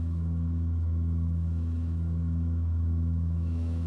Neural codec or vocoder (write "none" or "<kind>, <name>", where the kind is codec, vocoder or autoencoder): autoencoder, DAC-VAE